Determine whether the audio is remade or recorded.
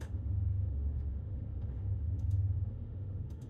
remade